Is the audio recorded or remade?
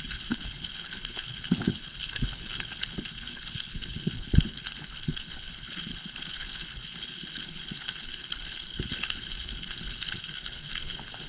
remade